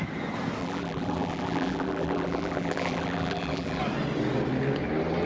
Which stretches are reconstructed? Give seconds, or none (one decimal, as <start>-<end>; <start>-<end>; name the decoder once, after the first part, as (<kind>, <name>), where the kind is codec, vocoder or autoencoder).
0.6-3.8 (vocoder, BigVGAN v2)